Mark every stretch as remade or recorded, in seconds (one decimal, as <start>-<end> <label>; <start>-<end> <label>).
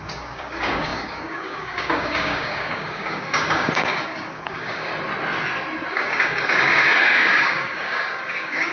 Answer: 0.0-4.9 remade; 4.9-5.9 recorded; 5.9-8.7 remade